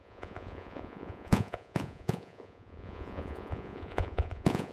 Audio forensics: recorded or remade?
remade